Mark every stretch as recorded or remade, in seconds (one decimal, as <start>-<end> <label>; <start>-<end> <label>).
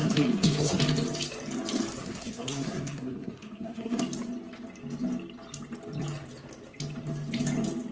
0.0-0.8 remade; 0.8-2.0 recorded; 2.0-4.0 remade; 4.0-7.9 recorded